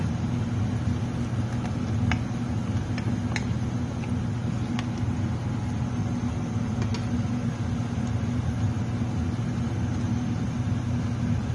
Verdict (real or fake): real